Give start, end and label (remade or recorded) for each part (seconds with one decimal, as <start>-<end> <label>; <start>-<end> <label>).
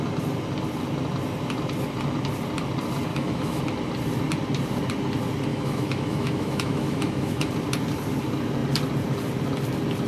0.0-3.1 recorded; 3.1-3.6 remade; 3.6-5.5 recorded; 5.5-7.5 remade; 7.5-10.1 recorded